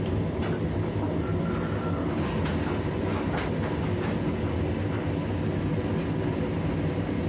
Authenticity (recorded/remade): recorded